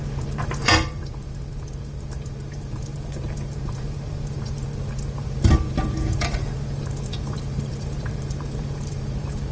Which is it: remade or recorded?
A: remade